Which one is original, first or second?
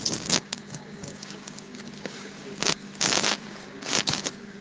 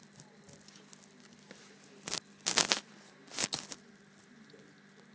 second